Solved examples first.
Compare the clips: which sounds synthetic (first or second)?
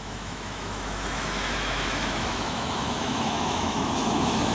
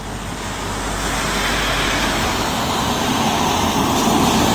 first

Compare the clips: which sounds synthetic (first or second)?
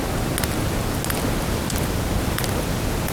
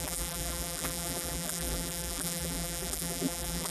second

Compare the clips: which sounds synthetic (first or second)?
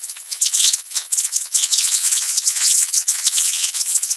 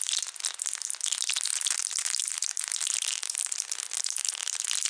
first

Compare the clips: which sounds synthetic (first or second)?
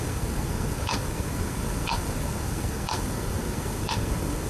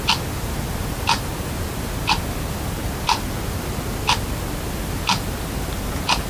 first